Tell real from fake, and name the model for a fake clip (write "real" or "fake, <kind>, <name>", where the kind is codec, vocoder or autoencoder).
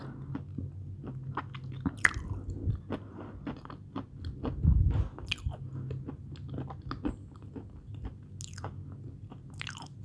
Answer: real